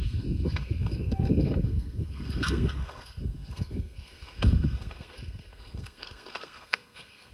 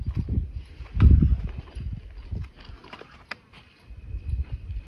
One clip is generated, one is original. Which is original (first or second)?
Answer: second